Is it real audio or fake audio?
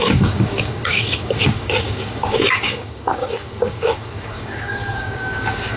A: fake